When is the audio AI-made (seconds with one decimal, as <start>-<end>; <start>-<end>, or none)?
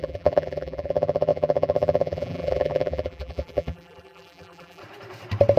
0.0-4.8